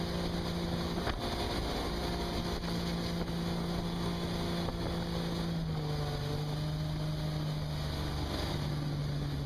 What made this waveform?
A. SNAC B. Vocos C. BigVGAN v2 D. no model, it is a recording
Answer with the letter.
D